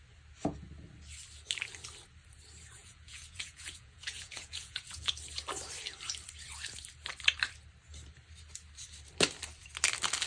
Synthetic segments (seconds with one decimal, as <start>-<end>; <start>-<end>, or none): 2.8-5.1